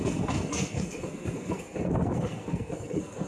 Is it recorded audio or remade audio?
remade